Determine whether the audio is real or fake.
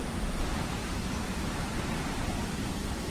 fake